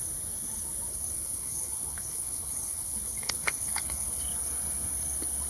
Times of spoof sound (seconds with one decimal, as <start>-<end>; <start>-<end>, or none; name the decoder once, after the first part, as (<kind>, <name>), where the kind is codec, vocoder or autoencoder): 0.9-4.2 (codec, HILCodec)